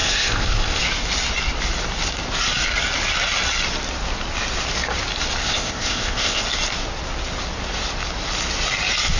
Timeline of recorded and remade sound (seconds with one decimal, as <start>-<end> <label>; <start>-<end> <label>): 0.0-0.8 remade; 0.8-5.4 recorded; 5.4-6.4 remade; 6.4-9.2 recorded